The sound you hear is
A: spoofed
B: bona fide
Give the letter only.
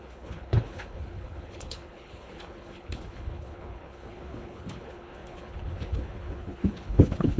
A